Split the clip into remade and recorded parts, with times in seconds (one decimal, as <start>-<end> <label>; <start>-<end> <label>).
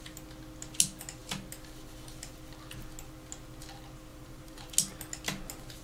0.0-4.1 recorded; 4.1-4.7 remade; 4.7-5.8 recorded